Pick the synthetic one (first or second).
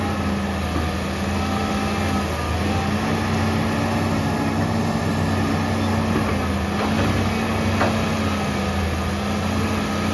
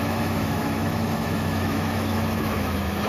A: second